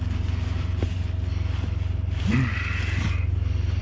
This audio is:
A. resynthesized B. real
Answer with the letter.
B